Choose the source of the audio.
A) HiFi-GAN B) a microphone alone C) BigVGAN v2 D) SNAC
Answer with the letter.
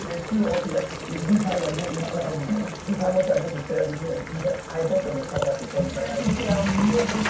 B